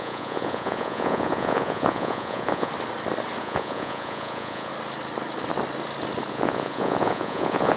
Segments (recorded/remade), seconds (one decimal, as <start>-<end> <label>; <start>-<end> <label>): 0.0-2.7 remade; 2.7-3.4 recorded; 3.4-4.7 remade; 4.7-6.3 recorded; 6.3-7.8 remade